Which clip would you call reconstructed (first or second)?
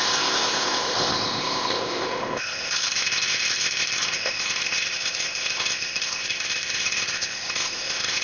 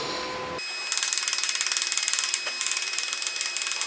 first